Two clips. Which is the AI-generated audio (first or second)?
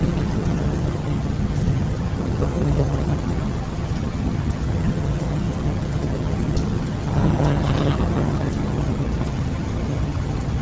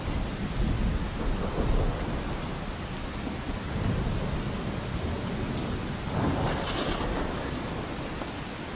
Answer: first